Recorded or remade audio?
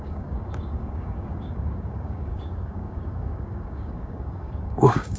remade